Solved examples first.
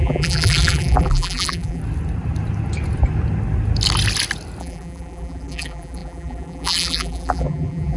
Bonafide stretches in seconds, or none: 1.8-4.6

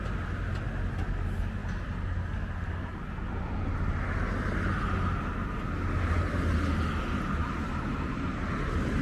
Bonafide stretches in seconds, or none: 0.0-7.4; 8.4-9.0

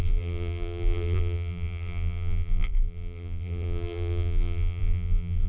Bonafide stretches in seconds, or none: none

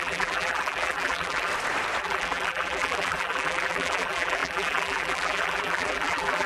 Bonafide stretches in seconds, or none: 1.5-2.0

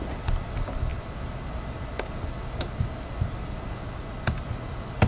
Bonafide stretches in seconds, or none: 0.0-5.1

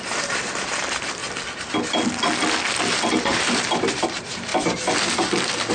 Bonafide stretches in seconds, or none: 1.2-3.1; 4.5-5.7